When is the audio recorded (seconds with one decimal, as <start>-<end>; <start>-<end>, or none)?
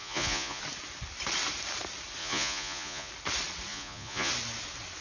0.6-2.2; 3.1-3.7; 4.3-5.0